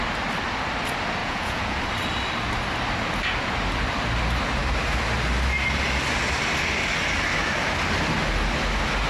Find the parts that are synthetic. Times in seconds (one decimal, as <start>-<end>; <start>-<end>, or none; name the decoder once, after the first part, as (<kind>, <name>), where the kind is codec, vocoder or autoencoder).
1.2-1.8 (vocoder, Vocos)